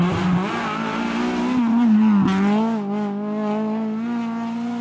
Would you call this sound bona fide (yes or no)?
yes